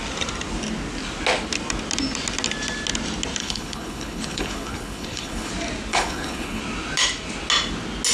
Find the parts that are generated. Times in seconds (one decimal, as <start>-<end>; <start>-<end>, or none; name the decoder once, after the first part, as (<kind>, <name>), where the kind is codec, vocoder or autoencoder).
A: 3.4-5.5 (codec, HILCodec); 5.9-6.6